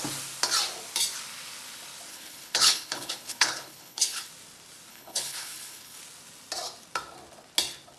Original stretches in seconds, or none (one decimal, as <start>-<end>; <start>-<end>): 0.0-2.1; 4.3-4.9; 6.0-8.0